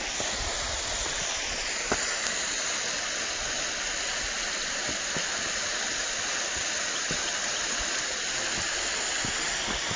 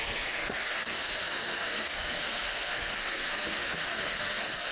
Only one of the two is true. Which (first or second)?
first